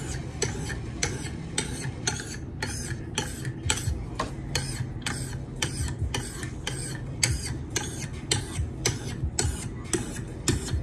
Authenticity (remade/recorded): recorded